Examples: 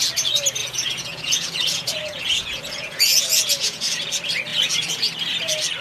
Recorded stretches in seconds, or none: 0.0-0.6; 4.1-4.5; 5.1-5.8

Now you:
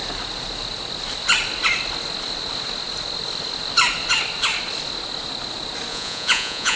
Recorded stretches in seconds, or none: 0.0-5.9

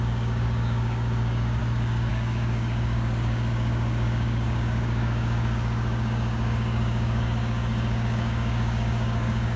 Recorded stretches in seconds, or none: none

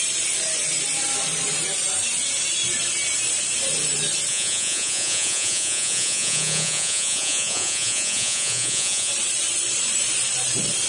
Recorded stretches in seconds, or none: 0.0-4.3; 9.1-10.9

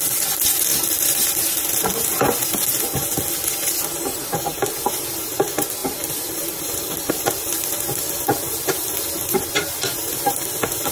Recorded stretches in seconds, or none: 0.0-0.7; 1.4-5.8; 7.1-10.9

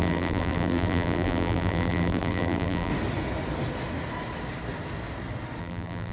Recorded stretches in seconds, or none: 2.9-5.6

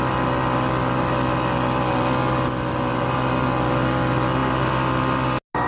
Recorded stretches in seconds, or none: 0.0-5.7